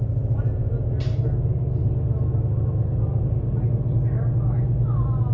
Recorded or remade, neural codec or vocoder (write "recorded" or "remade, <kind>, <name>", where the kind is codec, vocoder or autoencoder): recorded